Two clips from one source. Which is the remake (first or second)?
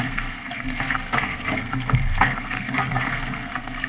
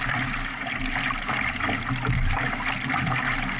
first